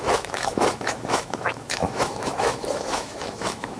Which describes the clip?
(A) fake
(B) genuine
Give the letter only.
A